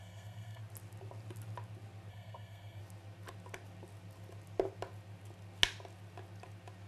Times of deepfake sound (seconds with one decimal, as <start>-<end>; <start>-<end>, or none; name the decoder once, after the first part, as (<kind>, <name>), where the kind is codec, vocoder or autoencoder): 0.0-0.6 (codec, SNAC); 2.1-2.8